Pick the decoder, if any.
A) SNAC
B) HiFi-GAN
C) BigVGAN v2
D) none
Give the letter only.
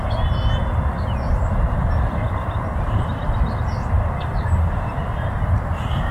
D